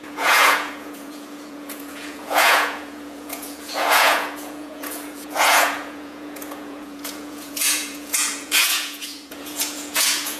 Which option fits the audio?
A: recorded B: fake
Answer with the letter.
B